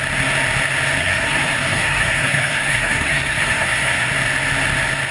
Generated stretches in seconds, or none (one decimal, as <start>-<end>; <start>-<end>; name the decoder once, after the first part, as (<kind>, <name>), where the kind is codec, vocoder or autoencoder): 1.0-4.1 (codec, SNAC)